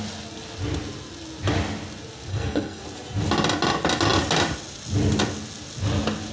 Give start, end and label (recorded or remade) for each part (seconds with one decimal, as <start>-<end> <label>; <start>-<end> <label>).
0.0-2.3 recorded; 2.3-2.8 remade; 2.8-6.3 recorded